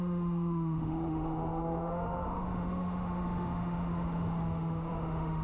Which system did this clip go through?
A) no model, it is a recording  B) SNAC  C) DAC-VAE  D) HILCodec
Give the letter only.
C